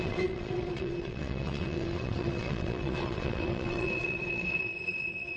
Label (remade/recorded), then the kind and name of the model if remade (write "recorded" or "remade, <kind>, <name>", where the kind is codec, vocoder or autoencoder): remade, vocoder, WaveNeXt